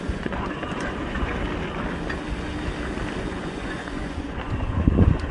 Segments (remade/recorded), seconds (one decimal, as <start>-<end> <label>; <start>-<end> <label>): 0.0-1.3 remade; 1.3-3.2 recorded; 3.2-5.3 remade